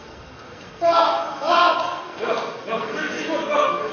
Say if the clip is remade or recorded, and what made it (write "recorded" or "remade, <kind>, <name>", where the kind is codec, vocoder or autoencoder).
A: remade, codec, SNAC